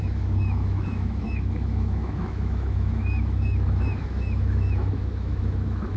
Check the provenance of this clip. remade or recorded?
remade